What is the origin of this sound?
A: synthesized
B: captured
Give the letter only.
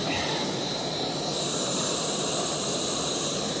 A